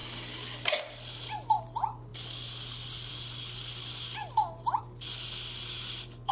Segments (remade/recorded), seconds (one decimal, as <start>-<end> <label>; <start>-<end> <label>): 0.0-6.3 recorded